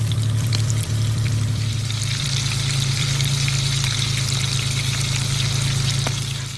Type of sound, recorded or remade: remade